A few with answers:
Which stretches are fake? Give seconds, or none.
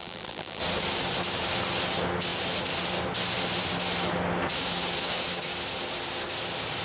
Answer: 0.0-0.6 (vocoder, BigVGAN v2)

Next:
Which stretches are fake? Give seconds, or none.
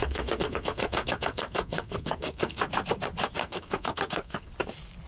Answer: 0.0-2.6 (codec, SNAC); 3.4-4.5